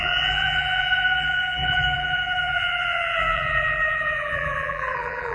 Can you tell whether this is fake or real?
fake